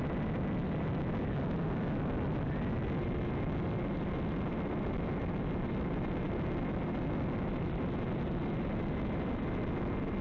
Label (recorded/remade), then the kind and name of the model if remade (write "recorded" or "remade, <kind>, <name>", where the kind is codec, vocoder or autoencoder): recorded